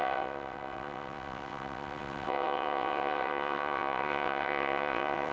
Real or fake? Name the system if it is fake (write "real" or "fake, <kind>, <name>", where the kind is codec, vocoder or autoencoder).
fake, vocoder, WaveNeXt